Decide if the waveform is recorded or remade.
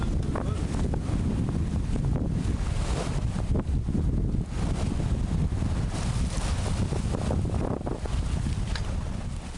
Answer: recorded